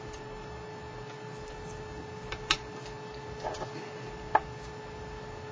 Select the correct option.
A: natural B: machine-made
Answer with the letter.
A